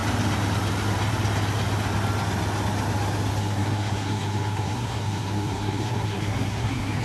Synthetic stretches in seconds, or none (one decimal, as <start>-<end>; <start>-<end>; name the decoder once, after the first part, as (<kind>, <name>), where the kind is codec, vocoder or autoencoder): 3.4-7.0 (codec, SNAC)